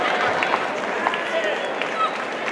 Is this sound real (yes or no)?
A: yes